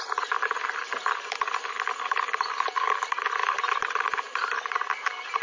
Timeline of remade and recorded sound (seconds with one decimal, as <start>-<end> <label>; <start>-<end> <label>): 0.0-5.4 recorded

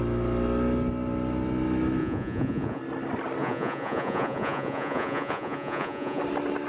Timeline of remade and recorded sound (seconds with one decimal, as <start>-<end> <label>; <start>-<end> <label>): 0.0-2.0 recorded; 2.0-2.8 remade; 2.8-3.4 recorded; 3.4-6.2 remade; 6.2-6.7 recorded

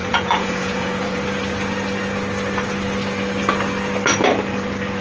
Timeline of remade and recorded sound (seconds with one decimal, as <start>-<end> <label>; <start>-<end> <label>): 0.0-1.2 remade; 1.2-5.0 recorded

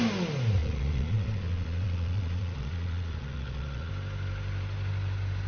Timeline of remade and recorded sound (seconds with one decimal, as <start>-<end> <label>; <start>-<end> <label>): 0.0-0.6 recorded; 0.6-3.9 remade; 3.9-5.5 recorded